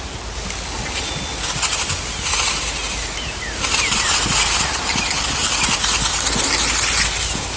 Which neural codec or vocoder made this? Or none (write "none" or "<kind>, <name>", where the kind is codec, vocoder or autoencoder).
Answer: none